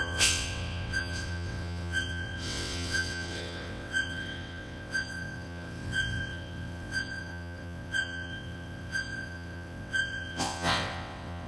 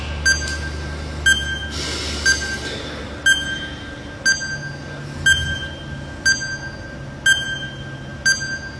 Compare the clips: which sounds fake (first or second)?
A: first